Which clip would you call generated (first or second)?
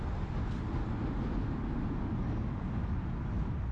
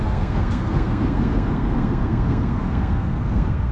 second